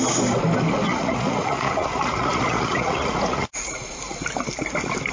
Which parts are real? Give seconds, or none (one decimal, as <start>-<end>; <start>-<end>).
0.0-0.9; 4.0-5.1